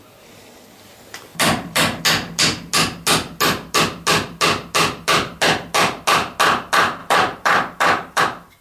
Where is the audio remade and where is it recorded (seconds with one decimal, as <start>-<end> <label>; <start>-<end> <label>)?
0.0-1.3 recorded; 1.3-2.0 remade; 2.0-7.0 recorded; 7.0-8.2 remade; 8.2-8.6 recorded